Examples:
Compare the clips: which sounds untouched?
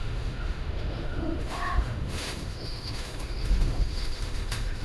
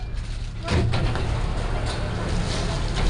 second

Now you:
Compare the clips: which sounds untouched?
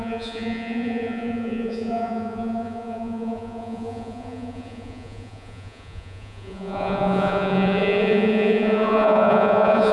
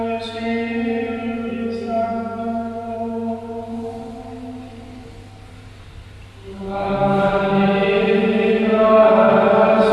second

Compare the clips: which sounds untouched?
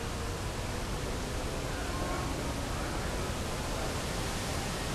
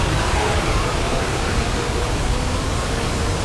first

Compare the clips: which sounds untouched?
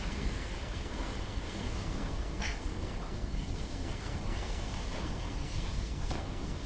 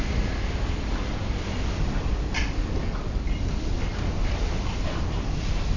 second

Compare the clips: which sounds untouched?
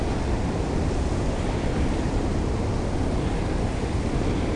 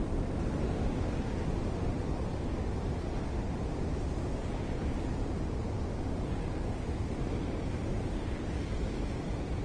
second